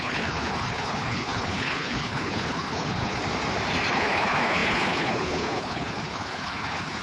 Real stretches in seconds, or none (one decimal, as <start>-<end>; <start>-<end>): 3.2-3.9